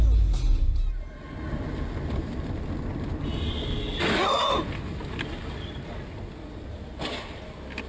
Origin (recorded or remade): recorded